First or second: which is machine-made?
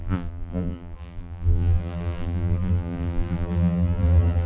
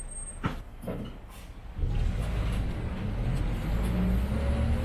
first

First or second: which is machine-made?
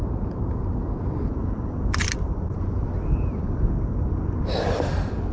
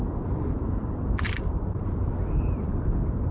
second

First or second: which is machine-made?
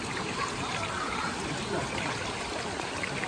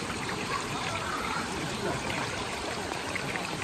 second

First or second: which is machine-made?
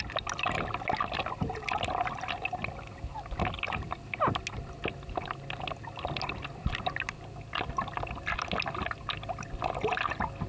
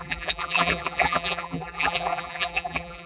second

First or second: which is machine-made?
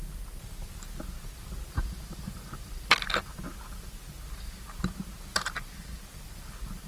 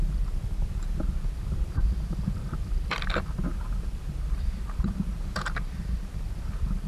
second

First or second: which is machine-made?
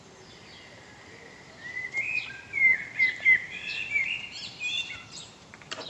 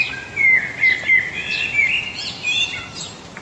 first